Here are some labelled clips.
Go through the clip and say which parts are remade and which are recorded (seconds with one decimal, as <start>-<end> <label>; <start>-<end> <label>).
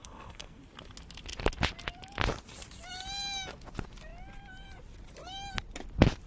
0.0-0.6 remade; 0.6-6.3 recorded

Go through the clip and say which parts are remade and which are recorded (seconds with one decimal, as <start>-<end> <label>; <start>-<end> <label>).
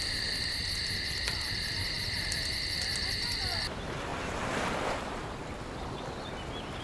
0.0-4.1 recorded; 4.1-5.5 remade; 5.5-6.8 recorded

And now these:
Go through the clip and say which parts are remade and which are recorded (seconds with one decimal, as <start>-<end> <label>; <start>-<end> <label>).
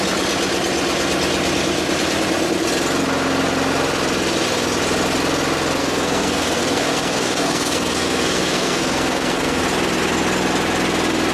0.0-5.8 recorded; 5.8-9.6 remade; 9.6-11.3 recorded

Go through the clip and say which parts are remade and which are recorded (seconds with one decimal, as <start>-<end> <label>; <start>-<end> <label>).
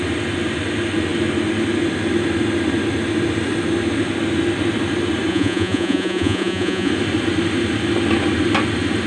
0.0-5.3 recorded; 5.3-6.9 remade; 6.9-9.1 recorded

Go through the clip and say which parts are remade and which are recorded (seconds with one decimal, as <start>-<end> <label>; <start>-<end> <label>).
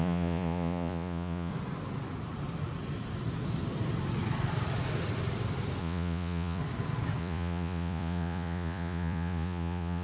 0.0-1.5 remade; 1.5-5.8 recorded; 5.8-6.6 remade; 6.6-7.2 recorded; 7.2-10.0 remade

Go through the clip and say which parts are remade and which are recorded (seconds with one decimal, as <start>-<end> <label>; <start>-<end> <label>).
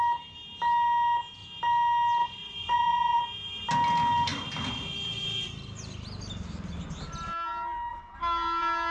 0.0-2.2 recorded; 2.2-3.2 remade; 3.2-8.9 recorded